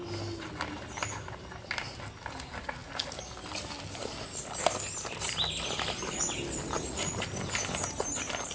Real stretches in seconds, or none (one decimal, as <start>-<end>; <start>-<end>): 0.0-8.5